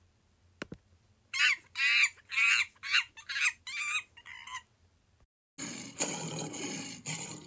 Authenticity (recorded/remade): recorded